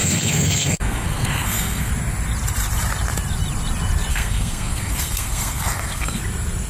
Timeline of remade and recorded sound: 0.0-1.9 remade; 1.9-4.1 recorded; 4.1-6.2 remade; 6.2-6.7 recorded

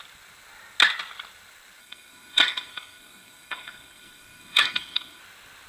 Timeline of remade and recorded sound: 0.0-1.8 recorded; 1.8-5.2 remade; 5.2-5.7 recorded

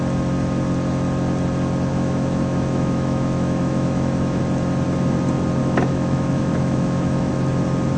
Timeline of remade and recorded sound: 0.0-1.9 recorded; 1.9-4.4 remade; 4.4-5.6 recorded; 5.6-7.3 remade; 7.3-8.0 recorded

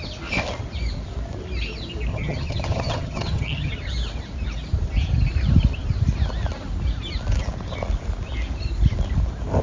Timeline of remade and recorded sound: 0.0-2.1 recorded; 2.1-3.7 remade; 3.7-9.6 recorded

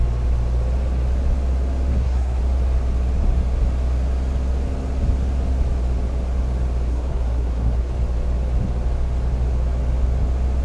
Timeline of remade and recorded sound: 0.0-1.9 recorded; 1.9-2.4 remade; 2.4-6.9 recorded; 6.9-7.9 remade; 7.9-10.6 recorded

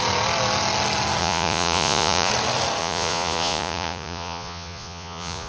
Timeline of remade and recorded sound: 0.0-1.2 recorded; 1.2-2.3 remade; 2.3-2.8 recorded; 2.8-5.5 remade

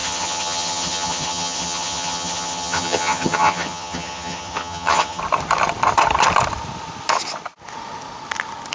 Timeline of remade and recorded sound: 0.0-5.2 remade; 5.2-8.7 recorded